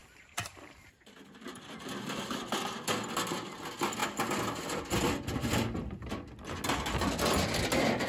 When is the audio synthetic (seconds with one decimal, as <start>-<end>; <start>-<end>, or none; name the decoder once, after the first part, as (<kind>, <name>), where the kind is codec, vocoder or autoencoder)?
0.0-2.4 (vocoder, BigVGAN v2)